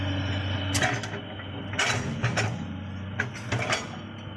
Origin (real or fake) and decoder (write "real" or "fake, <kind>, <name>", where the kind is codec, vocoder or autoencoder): real